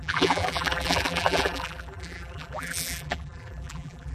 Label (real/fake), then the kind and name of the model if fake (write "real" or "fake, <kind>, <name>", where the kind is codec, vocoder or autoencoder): fake, vocoder, BigVGAN v2